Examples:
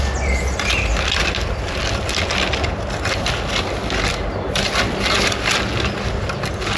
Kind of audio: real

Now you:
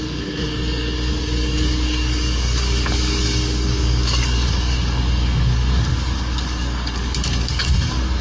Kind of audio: fake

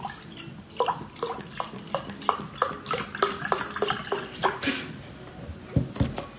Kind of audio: real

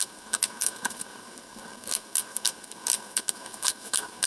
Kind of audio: fake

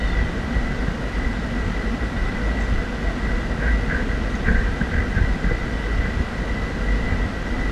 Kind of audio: real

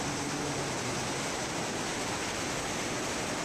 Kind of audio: real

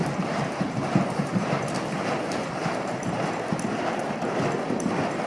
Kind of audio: fake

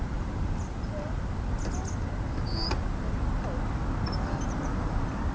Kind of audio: real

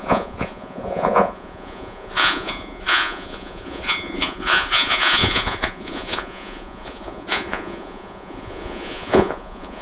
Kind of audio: fake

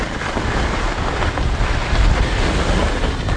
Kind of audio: real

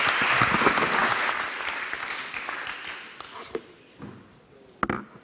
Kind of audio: real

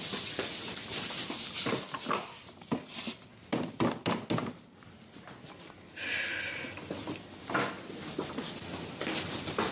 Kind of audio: real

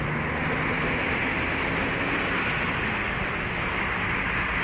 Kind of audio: real